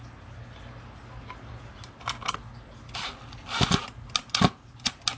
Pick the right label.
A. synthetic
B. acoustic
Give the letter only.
B